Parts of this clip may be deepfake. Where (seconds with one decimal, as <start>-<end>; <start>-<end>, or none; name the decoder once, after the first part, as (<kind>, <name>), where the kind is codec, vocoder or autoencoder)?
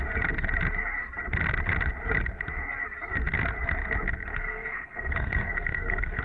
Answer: 4.3-6.2 (codec, SNAC)